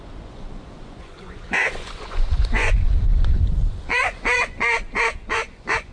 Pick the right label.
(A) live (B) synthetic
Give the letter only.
B